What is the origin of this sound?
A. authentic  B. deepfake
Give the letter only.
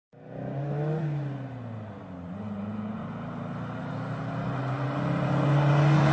A